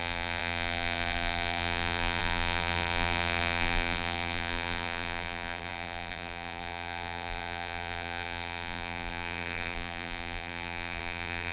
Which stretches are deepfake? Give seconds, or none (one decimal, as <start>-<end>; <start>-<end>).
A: 0.0-11.5